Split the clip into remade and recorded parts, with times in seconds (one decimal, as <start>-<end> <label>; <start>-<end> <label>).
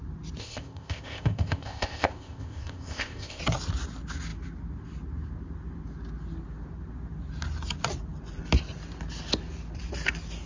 0.0-0.4 recorded; 0.4-3.4 remade; 3.4-10.5 recorded